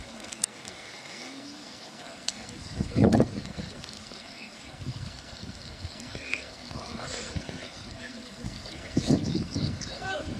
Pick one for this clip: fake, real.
fake